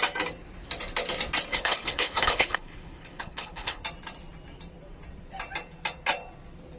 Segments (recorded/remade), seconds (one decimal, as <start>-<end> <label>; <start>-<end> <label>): 0.0-1.5 recorded; 1.5-3.8 remade; 3.8-6.8 recorded